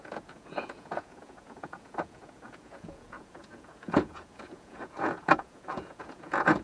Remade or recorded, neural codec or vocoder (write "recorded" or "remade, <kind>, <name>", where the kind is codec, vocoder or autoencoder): remade, vocoder, Vocos